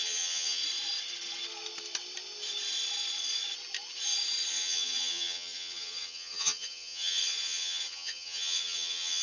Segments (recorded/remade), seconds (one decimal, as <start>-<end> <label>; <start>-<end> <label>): 0.0-0.6 remade; 0.6-4.5 recorded; 4.5-9.2 remade